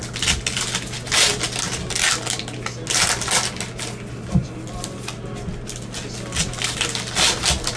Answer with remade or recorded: recorded